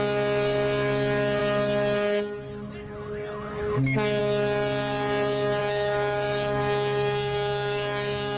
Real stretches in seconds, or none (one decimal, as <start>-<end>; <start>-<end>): 0.0-5.6